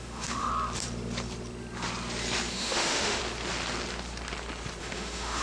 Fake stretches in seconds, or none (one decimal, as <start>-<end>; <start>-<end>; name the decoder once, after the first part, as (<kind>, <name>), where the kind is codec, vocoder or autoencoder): 0.0-0.5 (autoencoder, DAC-VAE); 2.5-3.2; 4.8-5.4

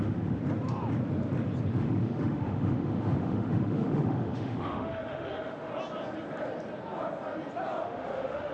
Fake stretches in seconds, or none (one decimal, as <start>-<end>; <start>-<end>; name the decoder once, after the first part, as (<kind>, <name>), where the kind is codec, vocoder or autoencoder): 0.0-0.4 (autoencoder, DAC-VAE); 1.7-5.7; 7.8-8.5

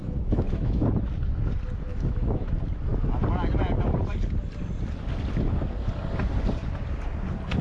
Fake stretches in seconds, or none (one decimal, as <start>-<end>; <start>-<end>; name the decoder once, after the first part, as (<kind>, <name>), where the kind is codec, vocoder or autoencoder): 0.0-0.9 (autoencoder, DAC-VAE); 1.9-2.5